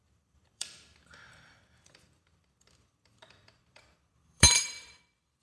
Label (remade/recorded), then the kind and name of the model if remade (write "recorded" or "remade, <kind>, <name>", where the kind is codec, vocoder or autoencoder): remade, vocoder, BigVGAN v2